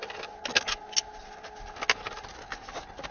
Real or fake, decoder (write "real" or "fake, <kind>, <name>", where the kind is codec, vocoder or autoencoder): real